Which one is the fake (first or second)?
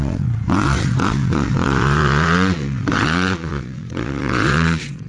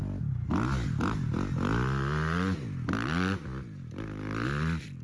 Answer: first